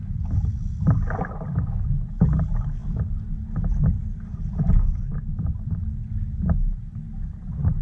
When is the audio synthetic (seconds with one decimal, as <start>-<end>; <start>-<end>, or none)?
none